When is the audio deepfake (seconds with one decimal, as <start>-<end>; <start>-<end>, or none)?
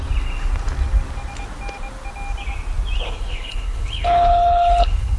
3.1-5.2